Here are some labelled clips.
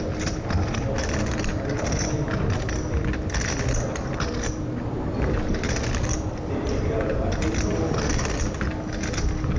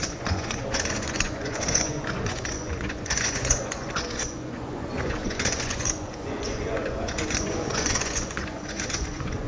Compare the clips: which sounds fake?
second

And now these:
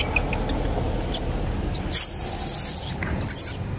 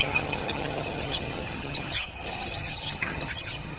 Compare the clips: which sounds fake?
second